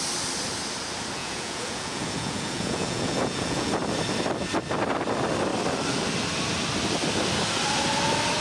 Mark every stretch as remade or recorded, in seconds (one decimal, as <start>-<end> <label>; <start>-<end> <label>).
0.0-1.2 recorded; 1.2-3.7 remade; 3.7-8.4 recorded

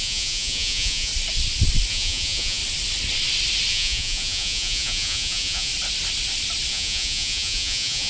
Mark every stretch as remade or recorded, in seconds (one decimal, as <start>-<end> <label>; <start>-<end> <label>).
0.0-1.1 remade; 1.1-1.9 recorded; 1.9-2.6 remade; 2.6-3.7 recorded; 3.7-5.7 remade; 5.7-6.7 recorded; 6.7-8.1 remade